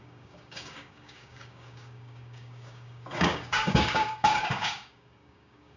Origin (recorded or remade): remade